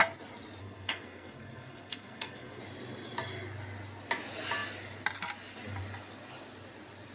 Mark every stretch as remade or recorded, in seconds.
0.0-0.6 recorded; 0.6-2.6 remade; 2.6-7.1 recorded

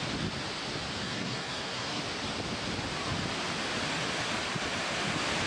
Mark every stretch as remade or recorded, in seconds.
0.0-1.0 recorded; 1.0-2.0 remade; 2.0-5.5 recorded

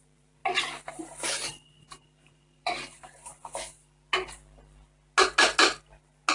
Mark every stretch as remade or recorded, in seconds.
0.0-0.4 remade; 0.4-2.3 recorded; 2.3-3.3 remade; 3.3-6.3 recorded